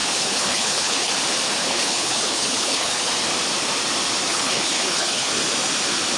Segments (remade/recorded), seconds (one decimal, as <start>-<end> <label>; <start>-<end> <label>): 0.0-1.1 remade; 1.1-1.6 recorded; 1.6-3.1 remade; 3.1-4.3 recorded; 4.3-5.3 remade; 5.3-6.2 recorded